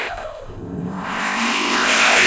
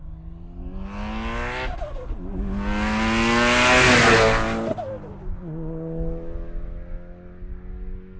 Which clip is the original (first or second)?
second